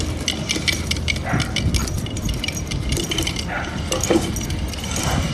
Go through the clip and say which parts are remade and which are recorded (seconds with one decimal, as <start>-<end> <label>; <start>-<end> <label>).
0.0-1.8 recorded; 1.8-5.3 remade